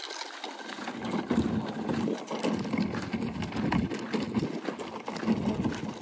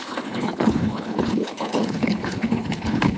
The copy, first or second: second